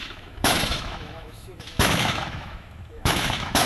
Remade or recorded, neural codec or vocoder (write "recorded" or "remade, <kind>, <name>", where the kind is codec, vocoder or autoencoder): remade, autoencoder, DAC-VAE